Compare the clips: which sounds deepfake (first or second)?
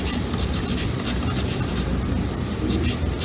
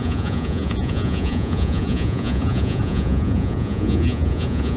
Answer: second